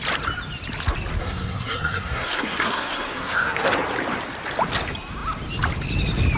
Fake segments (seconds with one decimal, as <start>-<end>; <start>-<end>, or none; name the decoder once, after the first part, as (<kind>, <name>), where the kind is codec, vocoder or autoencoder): 1.2-3.7 (codec, SNAC)